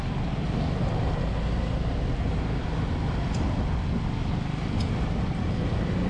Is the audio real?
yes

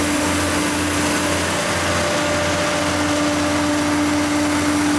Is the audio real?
yes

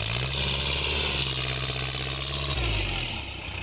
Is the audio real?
yes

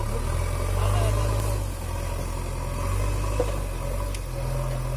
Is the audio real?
yes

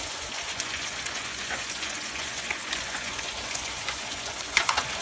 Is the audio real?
no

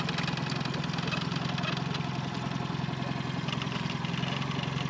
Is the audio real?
yes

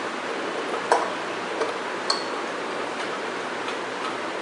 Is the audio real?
yes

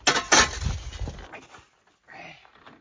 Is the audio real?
yes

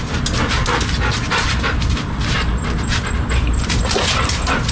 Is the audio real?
yes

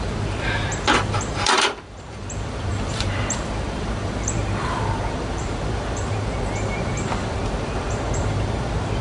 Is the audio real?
no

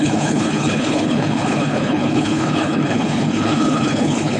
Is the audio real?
no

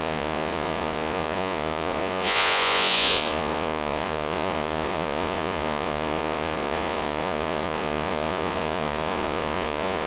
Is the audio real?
no